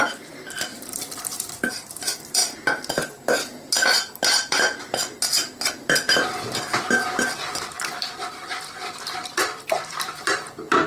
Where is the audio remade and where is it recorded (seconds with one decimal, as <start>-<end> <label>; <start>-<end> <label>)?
0.0-2.4 remade; 2.4-5.7 recorded; 5.7-10.9 remade